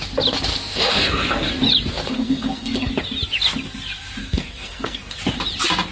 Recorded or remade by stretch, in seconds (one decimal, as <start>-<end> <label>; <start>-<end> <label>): 0.0-0.5 recorded; 0.5-1.5 remade; 1.5-2.0 recorded; 2.0-2.9 remade; 2.9-4.2 recorded; 4.2-5.2 remade; 5.2-5.9 recorded